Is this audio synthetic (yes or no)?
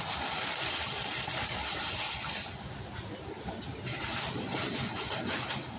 no